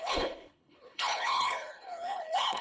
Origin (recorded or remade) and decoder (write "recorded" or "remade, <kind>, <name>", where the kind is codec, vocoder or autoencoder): remade, codec, HILCodec